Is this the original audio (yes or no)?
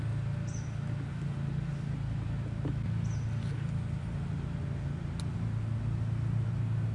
yes